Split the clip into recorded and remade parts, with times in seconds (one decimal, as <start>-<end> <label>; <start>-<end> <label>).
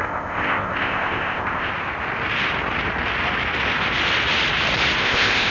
0.0-1.7 remade; 1.7-5.0 recorded; 5.0-5.5 remade